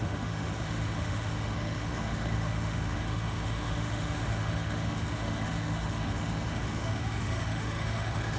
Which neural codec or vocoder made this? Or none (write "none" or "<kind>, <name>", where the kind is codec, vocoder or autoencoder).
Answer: autoencoder, DAC-VAE